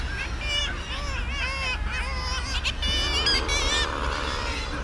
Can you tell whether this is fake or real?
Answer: real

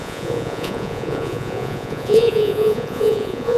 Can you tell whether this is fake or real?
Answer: fake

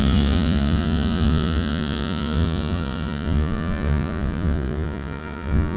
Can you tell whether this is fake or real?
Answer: fake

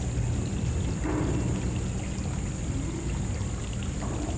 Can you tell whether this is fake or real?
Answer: real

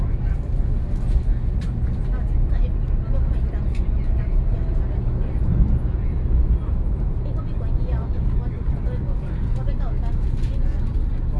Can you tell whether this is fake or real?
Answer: real